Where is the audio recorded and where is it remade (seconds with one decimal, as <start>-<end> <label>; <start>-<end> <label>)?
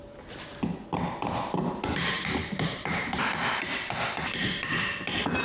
0.0-2.4 recorded; 2.4-4.8 remade; 4.8-5.4 recorded